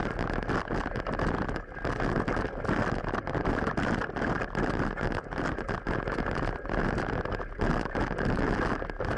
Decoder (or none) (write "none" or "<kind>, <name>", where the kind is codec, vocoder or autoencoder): none